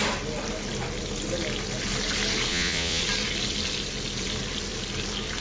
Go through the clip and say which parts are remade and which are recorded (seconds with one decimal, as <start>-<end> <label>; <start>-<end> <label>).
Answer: 0.0-2.5 recorded; 2.5-3.0 remade; 3.0-5.4 recorded